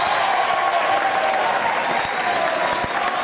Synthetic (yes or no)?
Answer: no